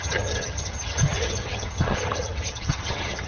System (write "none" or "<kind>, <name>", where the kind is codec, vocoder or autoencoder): vocoder, HiFi-GAN